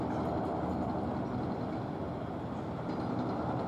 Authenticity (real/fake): real